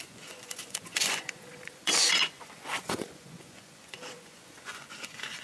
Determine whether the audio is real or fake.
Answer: fake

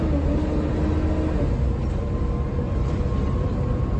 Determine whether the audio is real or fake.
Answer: real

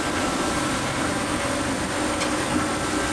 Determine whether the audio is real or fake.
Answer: real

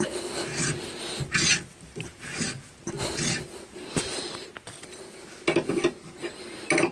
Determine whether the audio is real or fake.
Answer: real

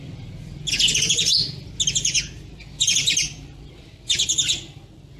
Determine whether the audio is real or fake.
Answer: real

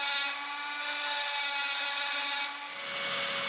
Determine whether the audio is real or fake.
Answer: real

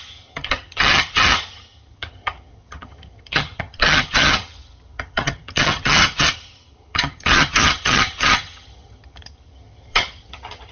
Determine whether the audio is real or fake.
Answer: fake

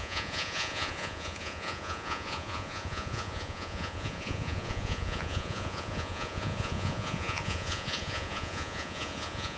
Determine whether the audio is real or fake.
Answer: fake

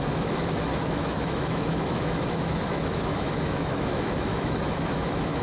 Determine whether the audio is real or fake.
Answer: fake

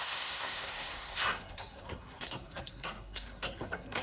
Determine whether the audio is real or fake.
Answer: fake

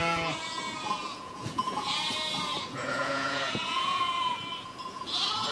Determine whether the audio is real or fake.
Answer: fake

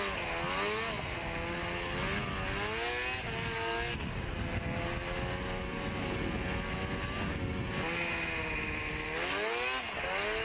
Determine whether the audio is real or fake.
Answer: real